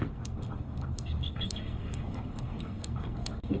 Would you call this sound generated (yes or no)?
yes